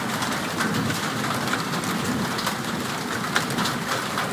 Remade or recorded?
remade